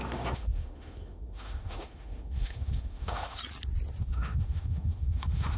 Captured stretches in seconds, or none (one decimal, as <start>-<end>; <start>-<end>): 3.4-4.0